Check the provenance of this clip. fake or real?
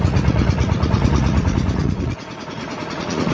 fake